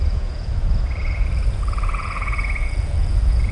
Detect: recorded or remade remade